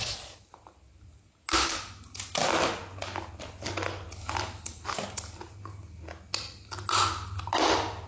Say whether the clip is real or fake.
real